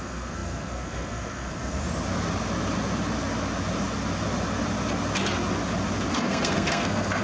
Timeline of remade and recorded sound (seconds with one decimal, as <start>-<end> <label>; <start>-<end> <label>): 0.0-1.8 remade; 1.8-6.1 recorded; 6.1-7.2 remade